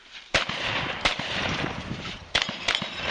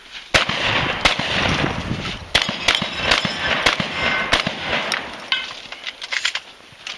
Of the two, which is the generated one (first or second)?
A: first